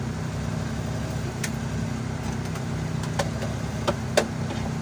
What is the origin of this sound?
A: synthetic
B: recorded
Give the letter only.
B